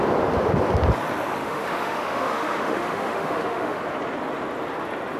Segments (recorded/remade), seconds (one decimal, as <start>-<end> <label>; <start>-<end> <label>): 0.0-1.4 recorded; 1.4-3.8 remade; 3.8-5.2 recorded